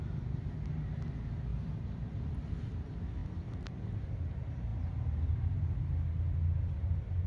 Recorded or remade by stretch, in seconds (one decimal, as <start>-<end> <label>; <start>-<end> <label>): 0.0-1.5 recorded; 1.5-2.3 remade; 2.3-3.2 recorded; 3.2-4.2 remade; 4.2-7.3 recorded